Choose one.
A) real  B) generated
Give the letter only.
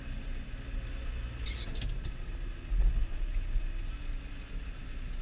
A